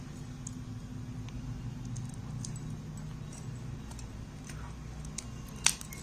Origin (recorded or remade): recorded